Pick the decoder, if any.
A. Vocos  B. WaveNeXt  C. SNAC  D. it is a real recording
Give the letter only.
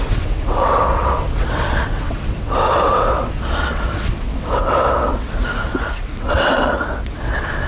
B